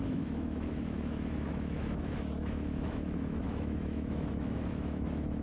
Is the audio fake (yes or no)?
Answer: yes